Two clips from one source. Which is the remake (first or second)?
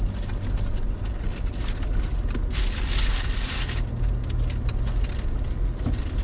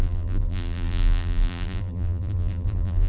second